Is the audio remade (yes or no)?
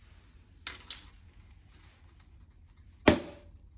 no